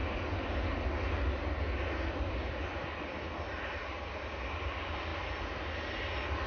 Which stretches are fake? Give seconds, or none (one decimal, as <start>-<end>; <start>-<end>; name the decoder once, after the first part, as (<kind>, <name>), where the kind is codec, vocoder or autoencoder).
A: none